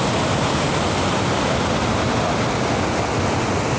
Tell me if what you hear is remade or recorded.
recorded